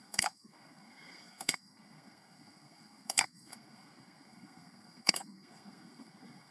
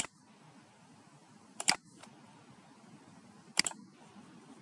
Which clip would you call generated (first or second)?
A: first